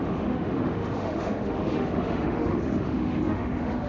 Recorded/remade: remade